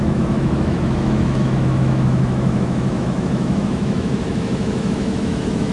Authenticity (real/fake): fake